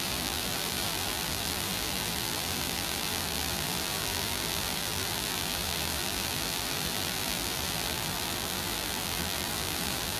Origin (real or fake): fake